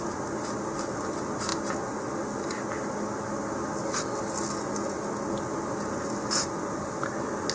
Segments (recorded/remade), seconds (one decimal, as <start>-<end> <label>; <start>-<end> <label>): 0.0-7.5 recorded